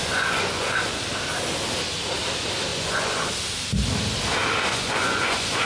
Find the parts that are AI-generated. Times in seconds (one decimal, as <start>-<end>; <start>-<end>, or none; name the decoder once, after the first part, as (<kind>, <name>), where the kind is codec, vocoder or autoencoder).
0.0-1.0 (vocoder, Vocos); 2.7-3.3; 4.7-5.7